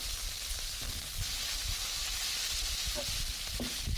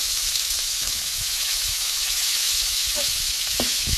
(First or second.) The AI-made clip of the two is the second